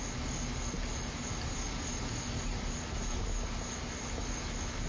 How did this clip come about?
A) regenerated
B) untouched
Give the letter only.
B